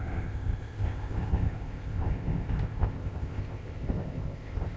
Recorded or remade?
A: remade